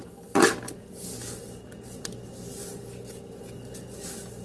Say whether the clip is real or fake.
real